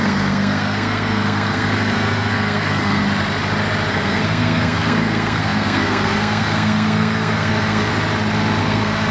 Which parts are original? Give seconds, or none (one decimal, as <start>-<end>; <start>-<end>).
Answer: 3.0-3.9; 7.9-8.6